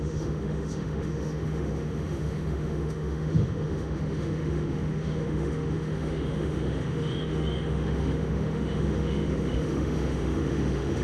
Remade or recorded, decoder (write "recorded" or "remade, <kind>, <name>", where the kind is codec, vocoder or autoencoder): remade, autoencoder, DAC-VAE